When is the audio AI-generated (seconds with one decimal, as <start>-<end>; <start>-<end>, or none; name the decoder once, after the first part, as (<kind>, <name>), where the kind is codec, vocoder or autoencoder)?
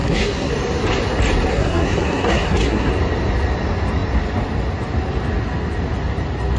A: 0.0-0.5 (codec, SNAC); 1.5-2.9